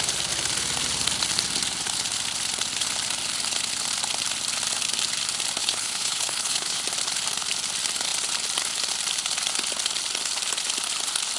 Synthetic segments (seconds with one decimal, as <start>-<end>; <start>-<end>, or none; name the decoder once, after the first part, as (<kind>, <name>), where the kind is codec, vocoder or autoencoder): 5.6-6.8 (codec, HILCodec)